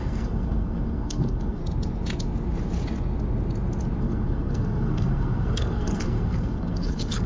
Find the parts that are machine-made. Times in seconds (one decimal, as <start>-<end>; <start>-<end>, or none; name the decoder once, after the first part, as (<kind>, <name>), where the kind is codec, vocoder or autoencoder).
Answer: 0.0-1.6 (codec, SNAC); 4.0-7.3